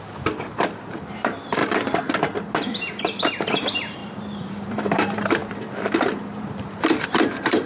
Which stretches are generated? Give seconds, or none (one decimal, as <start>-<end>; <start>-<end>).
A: 0.0-1.6; 2.9-7.7